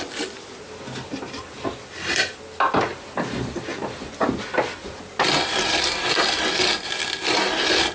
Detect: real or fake real